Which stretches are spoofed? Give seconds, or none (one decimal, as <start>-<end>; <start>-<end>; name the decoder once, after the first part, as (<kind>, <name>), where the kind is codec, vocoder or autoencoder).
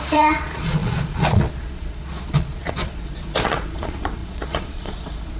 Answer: 0.0-5.4 (vocoder, Vocos)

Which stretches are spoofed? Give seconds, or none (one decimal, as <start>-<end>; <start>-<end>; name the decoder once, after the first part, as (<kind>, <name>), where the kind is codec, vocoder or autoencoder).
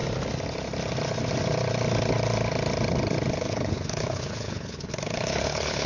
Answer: 3.3-5.9 (codec, HILCodec)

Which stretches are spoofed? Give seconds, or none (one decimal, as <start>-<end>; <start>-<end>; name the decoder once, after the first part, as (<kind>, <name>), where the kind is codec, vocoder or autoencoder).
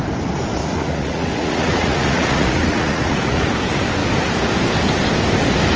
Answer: 0.6-3.4 (vocoder, Vocos)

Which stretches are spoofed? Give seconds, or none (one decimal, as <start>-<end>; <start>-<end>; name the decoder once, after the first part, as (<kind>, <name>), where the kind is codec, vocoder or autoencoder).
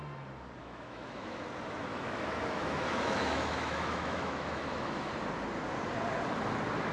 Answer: 0.6-1.4 (autoencoder, DAC-VAE); 1.9-5.1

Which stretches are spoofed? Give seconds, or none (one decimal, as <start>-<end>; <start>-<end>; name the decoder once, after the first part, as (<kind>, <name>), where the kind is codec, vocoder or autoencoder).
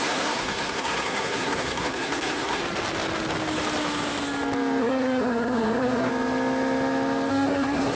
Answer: 0.0-2.6 (codec, SNAC); 4.8-6.1; 7.3-7.9